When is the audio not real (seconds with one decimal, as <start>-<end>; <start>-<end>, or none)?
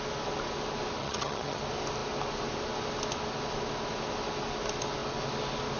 1.0-1.6